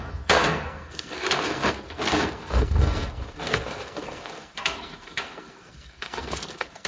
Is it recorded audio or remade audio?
remade